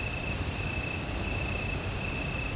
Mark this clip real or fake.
real